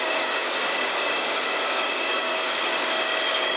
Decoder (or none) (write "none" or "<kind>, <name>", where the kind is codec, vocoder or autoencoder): codec, DAC